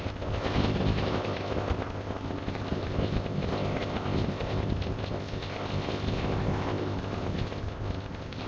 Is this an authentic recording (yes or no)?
no